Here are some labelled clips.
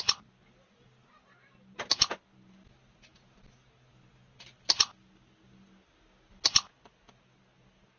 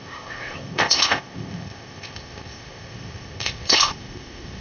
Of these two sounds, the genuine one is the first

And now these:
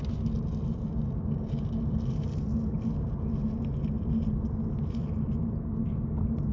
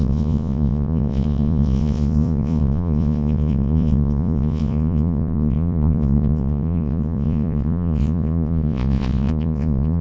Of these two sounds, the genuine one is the first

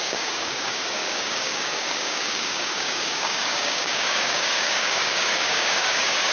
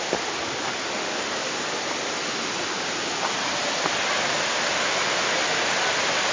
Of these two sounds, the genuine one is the second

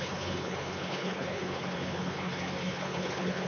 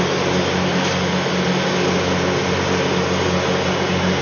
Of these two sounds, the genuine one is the second